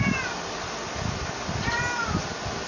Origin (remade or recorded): recorded